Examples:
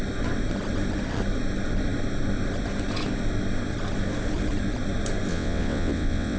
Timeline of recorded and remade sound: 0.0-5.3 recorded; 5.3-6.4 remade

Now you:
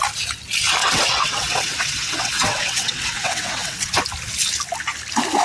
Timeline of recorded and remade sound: 0.0-0.8 recorded; 0.8-4.0 remade; 4.0-5.4 recorded

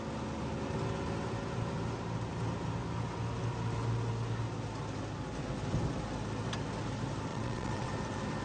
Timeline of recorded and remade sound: 0.0-7.3 recorded; 7.3-7.9 remade; 7.9-8.4 recorded

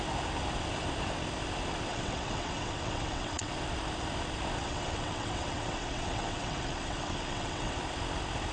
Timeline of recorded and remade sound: 0.0-1.9 recorded; 1.9-3.5 remade; 3.5-4.6 recorded; 4.6-7.8 remade; 7.8-8.5 recorded

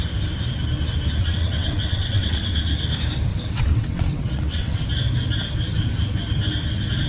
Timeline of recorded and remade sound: 0.0-1.2 recorded; 1.2-2.7 remade; 2.7-3.3 recorded; 3.3-4.9 remade; 4.9-7.1 recorded

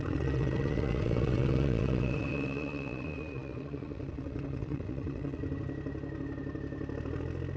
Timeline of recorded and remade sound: 0.0-5.4 remade; 5.4-7.6 recorded